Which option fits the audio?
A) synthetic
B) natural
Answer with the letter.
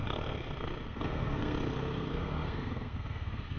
A